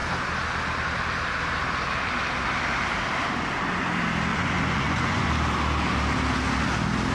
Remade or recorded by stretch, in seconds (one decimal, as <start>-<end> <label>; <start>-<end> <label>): 0.0-4.3 recorded; 4.3-5.3 remade; 5.3-7.1 recorded